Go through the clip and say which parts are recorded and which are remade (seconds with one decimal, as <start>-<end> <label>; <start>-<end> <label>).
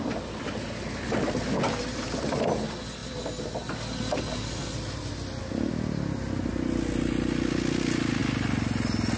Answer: 0.0-9.2 recorded